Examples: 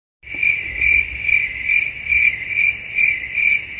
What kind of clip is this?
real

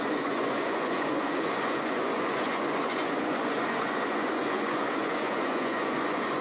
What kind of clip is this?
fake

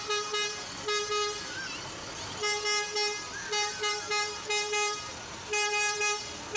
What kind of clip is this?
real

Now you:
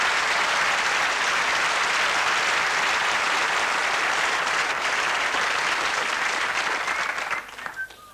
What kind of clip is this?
real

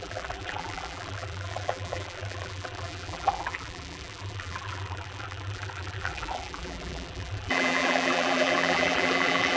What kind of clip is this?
fake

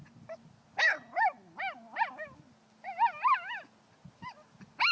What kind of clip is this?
real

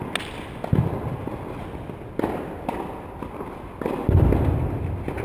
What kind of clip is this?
real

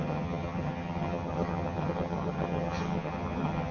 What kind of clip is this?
fake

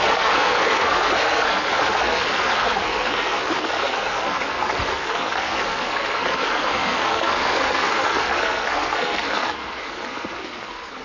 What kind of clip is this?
fake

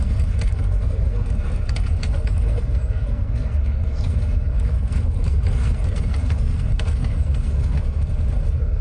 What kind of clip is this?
fake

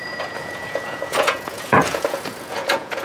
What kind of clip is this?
fake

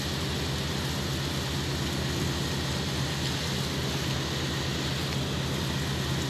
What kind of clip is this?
real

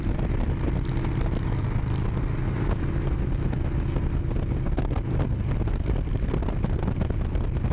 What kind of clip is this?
real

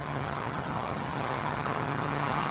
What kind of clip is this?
fake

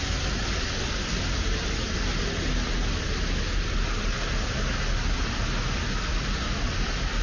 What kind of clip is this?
real